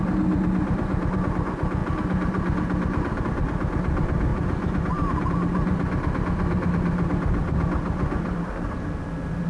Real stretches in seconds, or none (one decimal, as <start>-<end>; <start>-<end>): 0.0-9.5